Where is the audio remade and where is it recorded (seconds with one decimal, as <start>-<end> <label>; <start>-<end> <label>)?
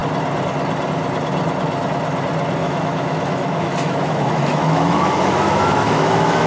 0.0-2.6 recorded; 2.6-6.5 remade